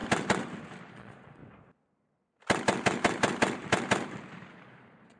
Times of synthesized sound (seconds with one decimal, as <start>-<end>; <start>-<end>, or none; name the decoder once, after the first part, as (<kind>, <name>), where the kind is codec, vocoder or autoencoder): 0.9-1.4 (vocoder, Vocos); 4.5-5.2